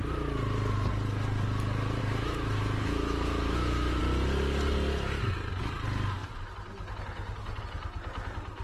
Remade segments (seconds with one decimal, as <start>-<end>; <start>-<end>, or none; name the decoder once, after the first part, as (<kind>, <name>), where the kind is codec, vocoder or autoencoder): 2.0-4.0 (autoencoder, DAC-VAE)